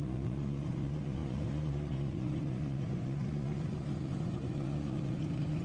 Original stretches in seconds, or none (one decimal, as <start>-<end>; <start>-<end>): none